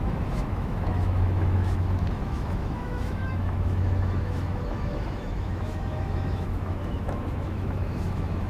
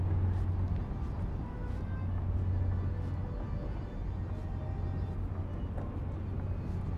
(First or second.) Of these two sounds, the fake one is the first